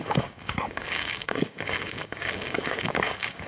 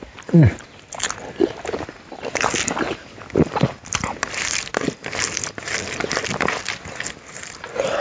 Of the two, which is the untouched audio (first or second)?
second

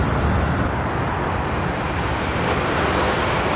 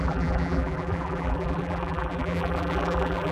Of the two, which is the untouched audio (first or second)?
first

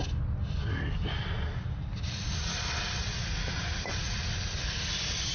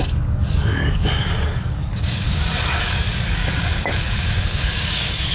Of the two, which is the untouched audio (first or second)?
first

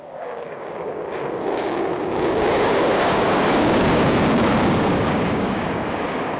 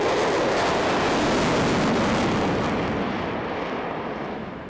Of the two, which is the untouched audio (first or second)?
second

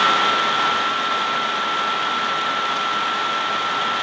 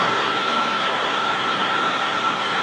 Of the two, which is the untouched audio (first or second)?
first